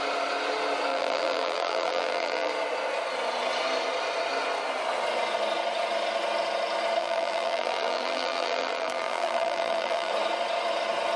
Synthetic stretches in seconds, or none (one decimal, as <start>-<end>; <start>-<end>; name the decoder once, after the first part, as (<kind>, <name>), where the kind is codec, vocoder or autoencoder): 0.9-2.5 (vocoder, BigVGAN v2); 7.0-10.1